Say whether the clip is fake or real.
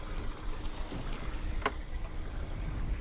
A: real